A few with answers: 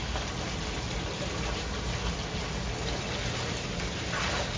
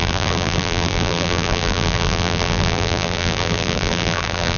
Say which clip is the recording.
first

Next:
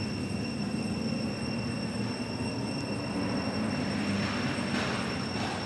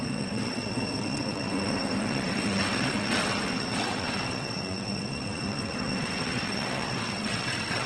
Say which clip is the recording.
first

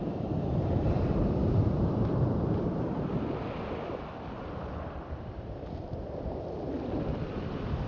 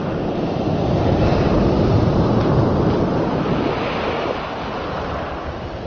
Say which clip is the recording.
second